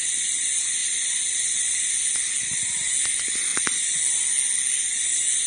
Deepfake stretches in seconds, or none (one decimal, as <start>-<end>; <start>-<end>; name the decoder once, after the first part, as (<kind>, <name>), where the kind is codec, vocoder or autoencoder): 3.5-4.0 (vocoder, Vocos)